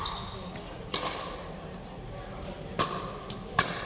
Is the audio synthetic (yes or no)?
no